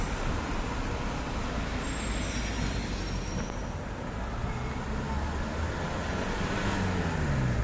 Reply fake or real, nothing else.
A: real